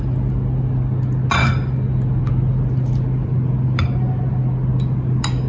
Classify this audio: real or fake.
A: real